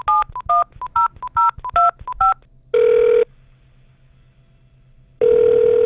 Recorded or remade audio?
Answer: recorded